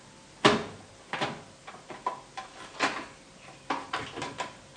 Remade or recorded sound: recorded